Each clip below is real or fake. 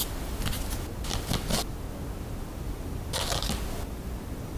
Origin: real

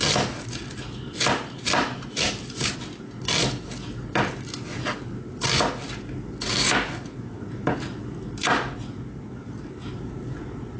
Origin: real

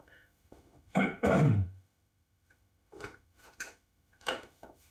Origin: fake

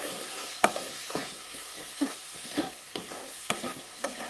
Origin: fake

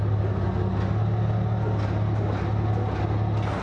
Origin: real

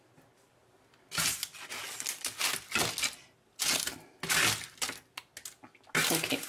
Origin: real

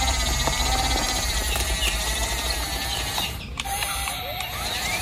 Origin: fake